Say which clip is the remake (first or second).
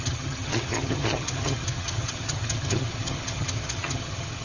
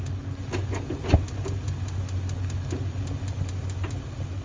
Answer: first